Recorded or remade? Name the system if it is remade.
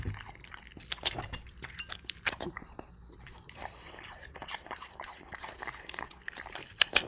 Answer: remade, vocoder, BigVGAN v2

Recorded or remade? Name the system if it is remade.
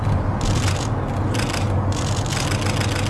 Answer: recorded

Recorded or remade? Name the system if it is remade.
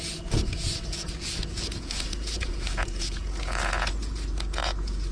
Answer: remade, vocoder, Vocos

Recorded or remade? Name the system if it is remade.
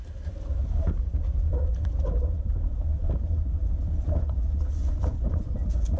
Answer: recorded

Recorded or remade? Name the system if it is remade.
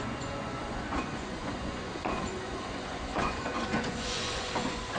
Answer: remade, vocoder, Vocos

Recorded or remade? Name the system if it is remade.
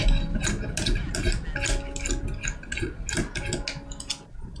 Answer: recorded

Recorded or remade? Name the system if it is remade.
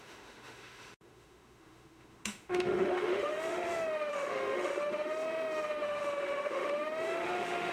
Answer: remade, autoencoder, DAC-VAE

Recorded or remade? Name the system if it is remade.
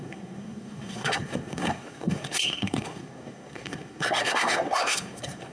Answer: remade, codec, SNAC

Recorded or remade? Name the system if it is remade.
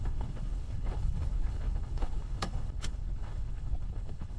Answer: remade, codec, HILCodec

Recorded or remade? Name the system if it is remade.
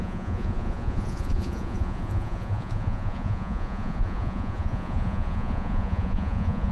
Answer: remade, vocoder, Vocos